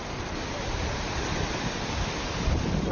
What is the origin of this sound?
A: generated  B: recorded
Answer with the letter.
B